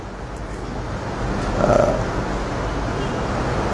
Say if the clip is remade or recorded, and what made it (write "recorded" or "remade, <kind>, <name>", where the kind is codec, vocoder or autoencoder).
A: recorded